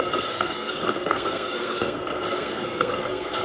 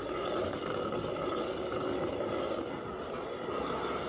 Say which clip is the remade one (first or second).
first